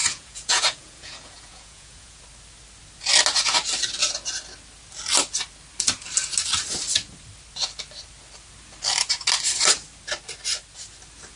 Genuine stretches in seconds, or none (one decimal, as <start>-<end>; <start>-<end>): 2.2-11.4